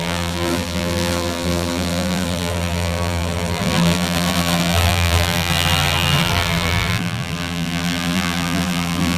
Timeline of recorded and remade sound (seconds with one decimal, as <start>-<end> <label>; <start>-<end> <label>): 0.0-9.2 remade